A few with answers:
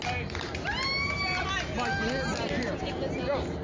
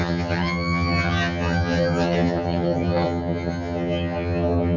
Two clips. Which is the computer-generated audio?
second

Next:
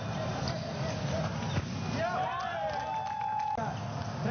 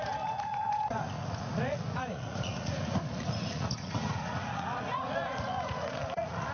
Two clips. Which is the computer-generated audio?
second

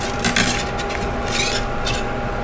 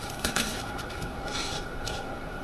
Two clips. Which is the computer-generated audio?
second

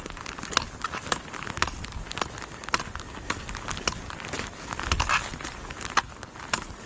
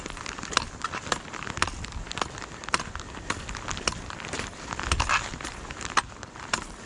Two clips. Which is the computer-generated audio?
second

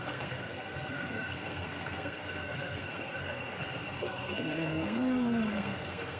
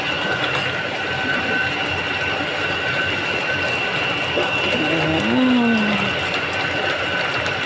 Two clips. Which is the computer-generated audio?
first